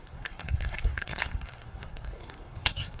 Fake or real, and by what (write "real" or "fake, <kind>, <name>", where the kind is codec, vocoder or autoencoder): fake, codec, SNAC